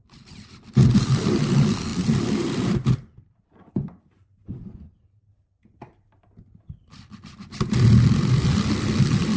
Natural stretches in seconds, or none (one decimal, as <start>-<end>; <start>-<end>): 0.0-9.4